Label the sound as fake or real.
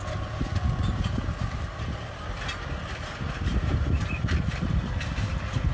fake